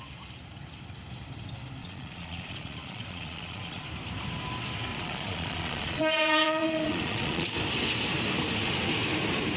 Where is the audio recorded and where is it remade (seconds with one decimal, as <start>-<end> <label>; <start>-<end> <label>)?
0.0-1.8 recorded; 1.8-3.8 remade; 3.8-4.9 recorded; 4.9-7.5 remade; 7.5-9.6 recorded